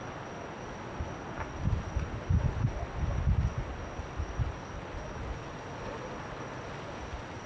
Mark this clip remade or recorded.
recorded